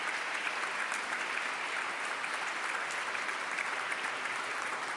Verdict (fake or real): real